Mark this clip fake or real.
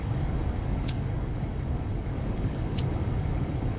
fake